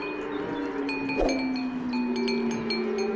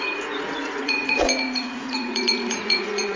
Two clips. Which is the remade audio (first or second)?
second